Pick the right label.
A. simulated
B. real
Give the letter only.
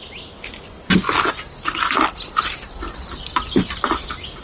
B